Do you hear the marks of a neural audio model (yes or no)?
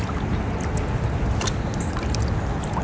no